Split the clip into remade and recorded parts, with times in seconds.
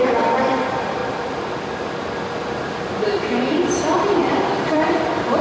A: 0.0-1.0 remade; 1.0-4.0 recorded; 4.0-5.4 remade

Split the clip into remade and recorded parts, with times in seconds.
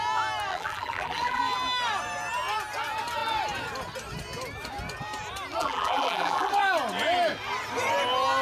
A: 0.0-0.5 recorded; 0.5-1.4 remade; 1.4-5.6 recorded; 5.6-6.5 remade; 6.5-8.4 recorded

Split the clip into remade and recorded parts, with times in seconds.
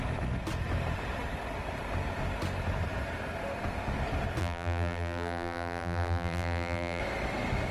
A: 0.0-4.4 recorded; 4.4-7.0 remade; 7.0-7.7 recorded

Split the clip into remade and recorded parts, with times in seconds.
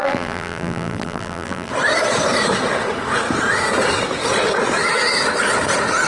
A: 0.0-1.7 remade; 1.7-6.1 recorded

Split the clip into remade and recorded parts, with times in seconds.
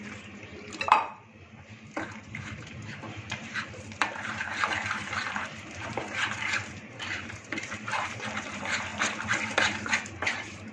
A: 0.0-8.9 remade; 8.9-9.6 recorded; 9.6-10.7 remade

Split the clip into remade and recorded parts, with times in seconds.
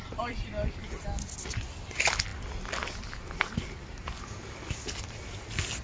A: 0.0-5.8 recorded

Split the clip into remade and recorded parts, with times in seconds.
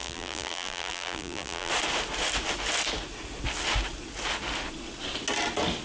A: 0.0-1.7 remade; 1.7-5.8 recorded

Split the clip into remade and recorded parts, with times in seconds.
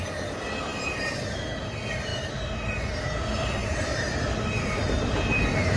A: 0.0-3.6 recorded; 3.6-4.8 remade; 4.8-5.8 recorded